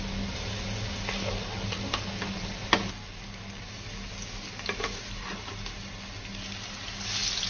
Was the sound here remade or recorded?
recorded